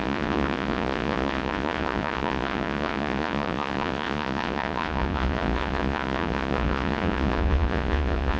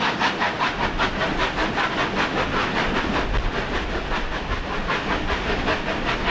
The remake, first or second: first